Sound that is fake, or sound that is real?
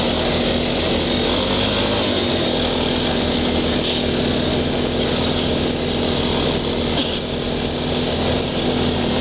real